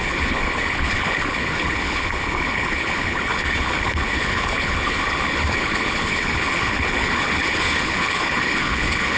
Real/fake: fake